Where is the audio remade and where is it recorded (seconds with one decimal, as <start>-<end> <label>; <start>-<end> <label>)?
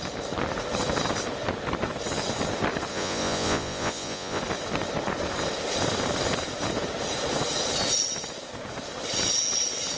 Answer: 0.0-2.9 recorded; 2.9-4.4 remade; 4.4-10.0 recorded